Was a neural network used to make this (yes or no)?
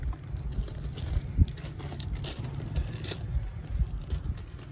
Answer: no